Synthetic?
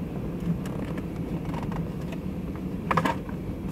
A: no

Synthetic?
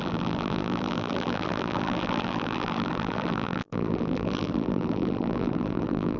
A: yes